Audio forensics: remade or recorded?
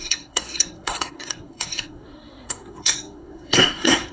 remade